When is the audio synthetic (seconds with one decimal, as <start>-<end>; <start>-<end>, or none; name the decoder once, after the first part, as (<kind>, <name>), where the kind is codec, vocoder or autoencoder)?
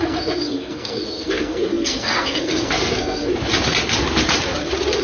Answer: 0.0-3.3 (codec, SNAC)